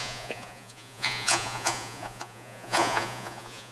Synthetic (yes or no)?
yes